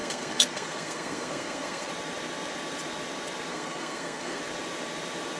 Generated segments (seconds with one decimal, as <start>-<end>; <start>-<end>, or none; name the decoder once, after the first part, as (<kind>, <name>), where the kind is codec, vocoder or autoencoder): 0.0-1.9 (codec, SNAC); 3.5-4.4